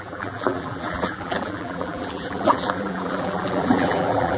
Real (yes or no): no